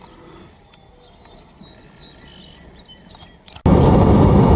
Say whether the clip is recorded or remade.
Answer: recorded